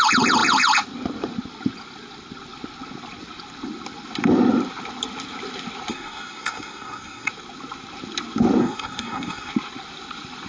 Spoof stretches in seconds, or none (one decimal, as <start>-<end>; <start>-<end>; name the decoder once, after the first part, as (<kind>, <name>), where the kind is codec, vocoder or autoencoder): 5.9-7.3 (codec, SNAC); 8.6-9.5

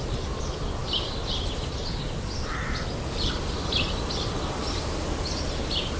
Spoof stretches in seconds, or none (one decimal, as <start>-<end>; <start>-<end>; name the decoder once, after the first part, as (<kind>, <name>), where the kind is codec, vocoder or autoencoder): none

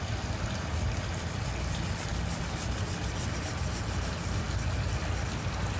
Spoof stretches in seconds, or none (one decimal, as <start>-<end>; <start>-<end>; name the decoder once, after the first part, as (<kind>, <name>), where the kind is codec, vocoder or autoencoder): none

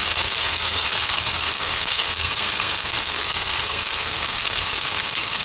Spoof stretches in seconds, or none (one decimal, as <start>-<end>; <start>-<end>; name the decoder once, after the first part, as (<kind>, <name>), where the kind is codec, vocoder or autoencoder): 0.0-5.4 (codec, SNAC)

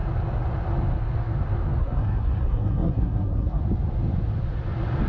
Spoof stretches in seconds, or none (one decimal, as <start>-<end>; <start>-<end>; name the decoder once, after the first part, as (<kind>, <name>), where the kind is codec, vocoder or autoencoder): 1.8-3.6 (codec, SNAC)

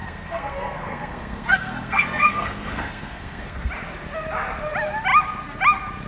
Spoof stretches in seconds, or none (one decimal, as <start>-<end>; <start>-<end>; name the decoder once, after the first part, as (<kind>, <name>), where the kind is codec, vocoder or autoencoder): 0.0-3.7 (codec, SNAC)

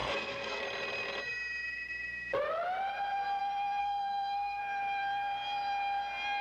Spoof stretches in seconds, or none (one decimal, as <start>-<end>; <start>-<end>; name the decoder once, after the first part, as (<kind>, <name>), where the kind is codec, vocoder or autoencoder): 0.0-0.6 (codec, SNAC); 3.8-4.6